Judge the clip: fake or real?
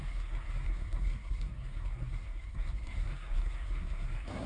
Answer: fake